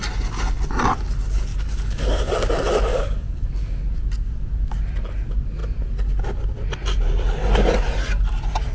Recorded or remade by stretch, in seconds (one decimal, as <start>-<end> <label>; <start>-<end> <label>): 0.0-1.5 recorded; 1.5-2.3 remade; 2.3-2.9 recorded; 2.9-3.8 remade; 3.8-8.7 recorded